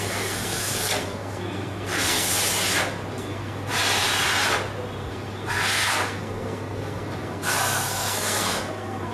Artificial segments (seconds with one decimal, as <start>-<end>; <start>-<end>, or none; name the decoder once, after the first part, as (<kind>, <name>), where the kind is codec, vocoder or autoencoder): 0.0-2.3 (codec, SNAC); 3.1-3.7; 5.0-9.1

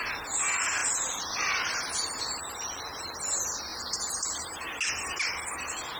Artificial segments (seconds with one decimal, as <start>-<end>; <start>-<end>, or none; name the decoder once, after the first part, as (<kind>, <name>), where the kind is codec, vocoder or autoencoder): 0.8-2.2 (vocoder, BigVGAN v2); 3.7-4.7